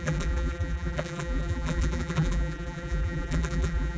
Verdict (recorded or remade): remade